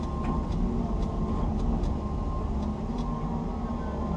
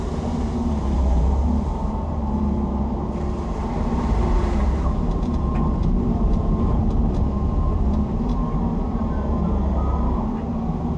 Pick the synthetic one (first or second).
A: second